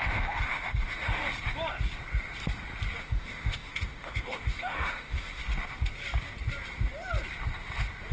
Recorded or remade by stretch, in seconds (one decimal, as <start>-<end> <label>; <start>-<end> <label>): 0.0-1.2 remade; 1.2-3.0 recorded; 3.0-5.4 remade; 5.4-8.1 recorded